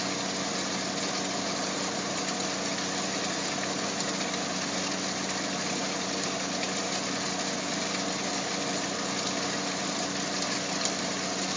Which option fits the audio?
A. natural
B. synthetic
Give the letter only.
A